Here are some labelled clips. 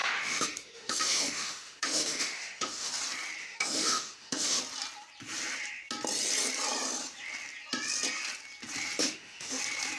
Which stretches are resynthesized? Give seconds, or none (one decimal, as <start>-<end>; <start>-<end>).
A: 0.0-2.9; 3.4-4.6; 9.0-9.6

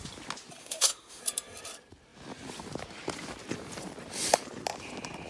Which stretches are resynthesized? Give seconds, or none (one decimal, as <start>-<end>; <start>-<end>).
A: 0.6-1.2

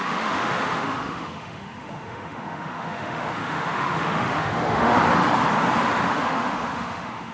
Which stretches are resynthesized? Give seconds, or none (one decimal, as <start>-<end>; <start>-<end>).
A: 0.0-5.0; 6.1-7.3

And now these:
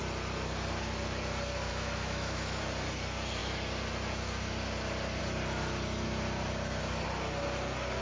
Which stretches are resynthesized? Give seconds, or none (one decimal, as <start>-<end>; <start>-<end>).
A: 1.7-2.6

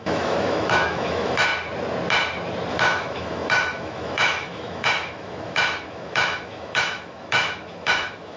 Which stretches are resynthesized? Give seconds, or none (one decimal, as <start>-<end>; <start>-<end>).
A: 0.0-1.5; 2.7-8.4